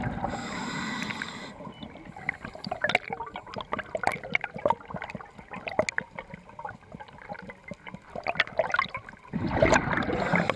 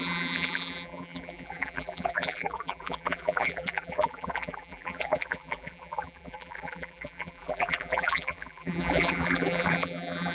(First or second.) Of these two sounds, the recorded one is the first